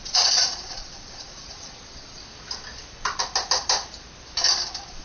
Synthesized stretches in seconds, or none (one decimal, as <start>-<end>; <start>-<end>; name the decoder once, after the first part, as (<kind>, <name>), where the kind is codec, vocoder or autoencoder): 0.0-2.2 (vocoder, Vocos)